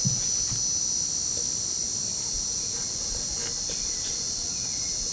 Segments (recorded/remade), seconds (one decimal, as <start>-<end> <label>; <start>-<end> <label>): 0.0-2.3 recorded; 2.3-3.4 remade; 3.4-3.9 recorded; 3.9-5.1 remade